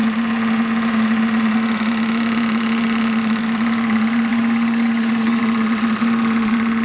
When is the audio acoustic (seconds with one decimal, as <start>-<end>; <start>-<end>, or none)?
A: 0.0-4.3; 5.4-6.8

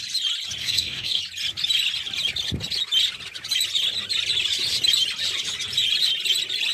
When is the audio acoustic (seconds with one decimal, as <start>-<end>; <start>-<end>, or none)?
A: 0.0-0.6; 1.2-6.7

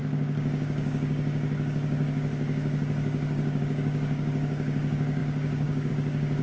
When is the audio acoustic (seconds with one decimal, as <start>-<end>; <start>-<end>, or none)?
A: none

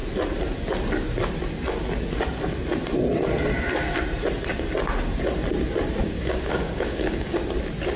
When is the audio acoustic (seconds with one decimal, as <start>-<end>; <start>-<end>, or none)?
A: 0.0-6.0; 7.4-8.0